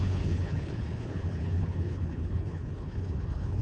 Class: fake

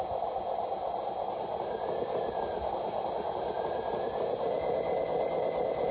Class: real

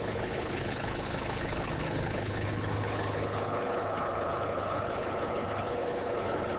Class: fake